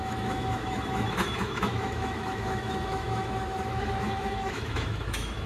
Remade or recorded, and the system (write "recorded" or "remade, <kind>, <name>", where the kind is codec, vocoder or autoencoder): remade, autoencoder, DAC-VAE